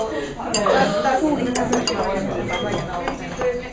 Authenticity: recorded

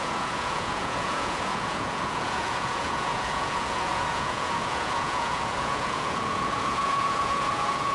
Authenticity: remade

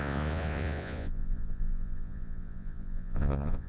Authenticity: remade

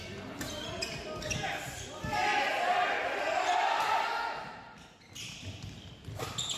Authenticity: recorded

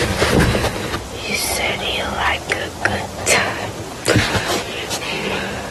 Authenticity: recorded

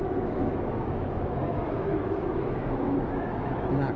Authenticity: remade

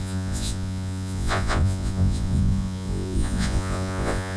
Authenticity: remade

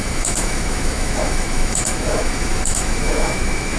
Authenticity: remade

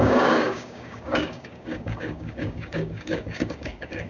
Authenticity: remade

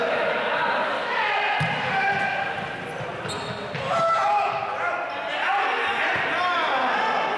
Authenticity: recorded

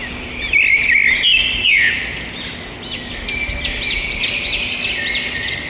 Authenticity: recorded